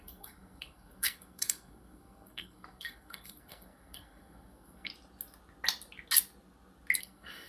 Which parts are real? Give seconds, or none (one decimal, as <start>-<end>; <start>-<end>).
4.9-7.0